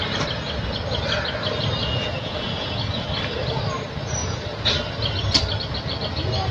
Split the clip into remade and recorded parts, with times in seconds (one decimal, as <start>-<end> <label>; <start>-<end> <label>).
0.0-1.8 recorded; 1.8-3.1 remade; 3.1-4.2 recorded; 4.2-4.8 remade; 4.8-6.5 recorded